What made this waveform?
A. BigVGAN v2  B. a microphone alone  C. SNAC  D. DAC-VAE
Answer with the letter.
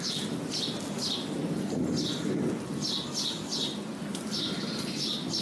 B